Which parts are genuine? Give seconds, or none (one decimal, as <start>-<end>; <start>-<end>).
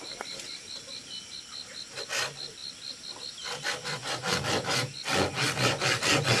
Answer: 0.0-6.4